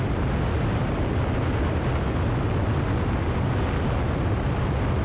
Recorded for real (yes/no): yes